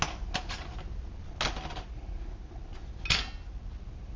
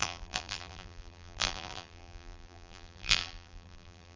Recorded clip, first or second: first